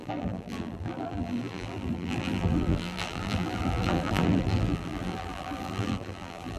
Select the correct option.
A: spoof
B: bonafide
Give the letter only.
A